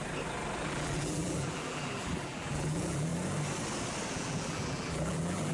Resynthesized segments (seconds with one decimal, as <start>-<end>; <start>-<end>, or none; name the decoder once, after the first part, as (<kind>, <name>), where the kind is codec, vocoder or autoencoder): 0.6-3.1 (vocoder, BigVGAN v2); 4.1-5.5